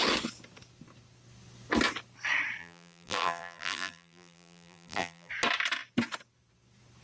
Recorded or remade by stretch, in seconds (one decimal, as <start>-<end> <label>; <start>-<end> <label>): 0.0-2.6 recorded; 2.6-5.3 remade; 5.3-7.0 recorded